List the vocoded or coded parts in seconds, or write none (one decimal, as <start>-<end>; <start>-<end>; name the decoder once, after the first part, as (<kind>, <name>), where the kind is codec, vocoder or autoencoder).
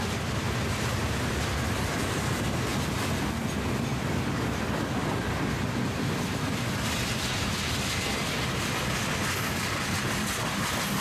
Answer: 0.0-2.7 (vocoder, BigVGAN v2); 6.0-11.0